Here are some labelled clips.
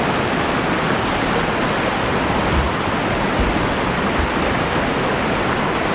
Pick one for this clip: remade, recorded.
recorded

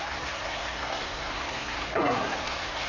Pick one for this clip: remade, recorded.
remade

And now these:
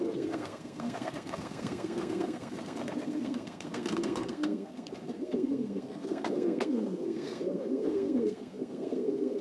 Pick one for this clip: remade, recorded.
remade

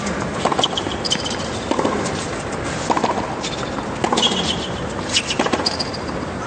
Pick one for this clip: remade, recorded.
recorded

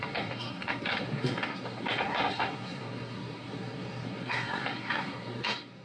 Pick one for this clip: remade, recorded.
remade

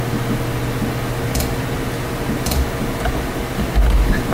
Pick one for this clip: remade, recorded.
recorded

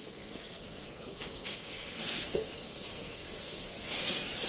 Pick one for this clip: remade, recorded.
remade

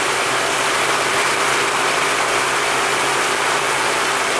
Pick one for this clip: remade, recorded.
remade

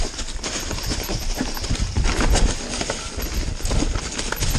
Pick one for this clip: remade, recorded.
recorded